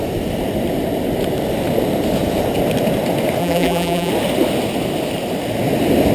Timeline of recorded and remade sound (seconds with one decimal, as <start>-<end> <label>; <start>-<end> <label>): 0.0-3.4 recorded; 3.4-4.1 remade; 4.1-6.1 recorded